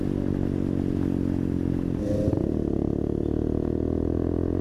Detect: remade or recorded recorded